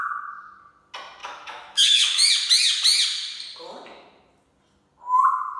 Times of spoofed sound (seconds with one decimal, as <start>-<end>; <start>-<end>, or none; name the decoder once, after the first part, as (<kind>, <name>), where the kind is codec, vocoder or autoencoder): 1.2-2.3 (autoencoder, DAC-VAE)